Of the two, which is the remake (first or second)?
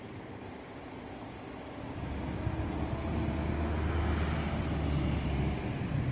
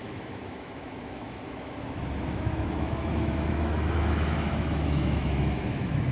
second